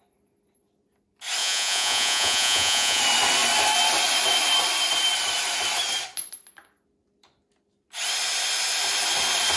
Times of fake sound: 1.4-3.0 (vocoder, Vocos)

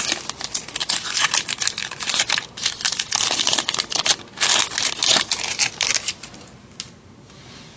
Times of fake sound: 0.8-1.3 (vocoder, Vocos); 1.8-2.3

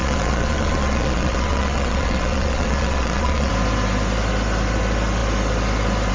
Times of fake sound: 0.0-3.5 (vocoder, Vocos)